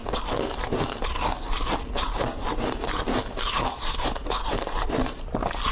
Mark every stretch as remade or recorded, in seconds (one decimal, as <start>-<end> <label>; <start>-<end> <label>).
0.0-5.7 recorded